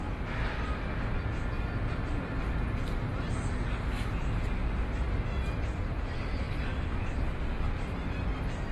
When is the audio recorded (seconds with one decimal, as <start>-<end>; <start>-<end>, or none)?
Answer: 0.0-5.7; 6.6-8.7